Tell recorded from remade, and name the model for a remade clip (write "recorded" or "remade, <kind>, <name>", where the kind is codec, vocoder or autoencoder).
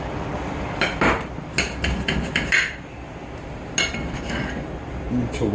recorded